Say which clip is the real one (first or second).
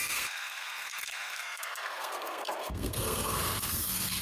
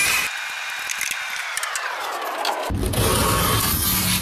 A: second